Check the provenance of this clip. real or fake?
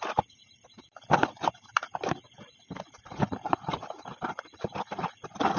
real